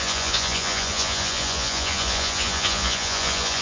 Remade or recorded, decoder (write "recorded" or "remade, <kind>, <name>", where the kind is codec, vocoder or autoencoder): remade, vocoder, Vocos